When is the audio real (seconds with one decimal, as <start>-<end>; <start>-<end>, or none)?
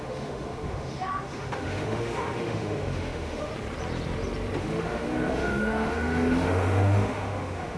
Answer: 3.5-4.6